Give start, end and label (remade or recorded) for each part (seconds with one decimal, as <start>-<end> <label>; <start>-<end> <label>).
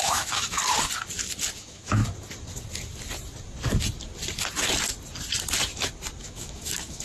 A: 0.0-0.6 remade; 0.6-1.6 recorded; 1.6-2.0 remade; 2.0-6.2 recorded; 6.2-7.0 remade